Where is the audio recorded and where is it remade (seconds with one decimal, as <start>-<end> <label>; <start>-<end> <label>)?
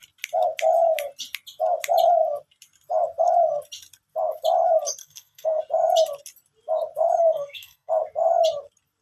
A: 0.0-5.0 recorded; 5.0-5.6 remade; 5.6-7.2 recorded; 7.2-7.9 remade; 7.9-9.0 recorded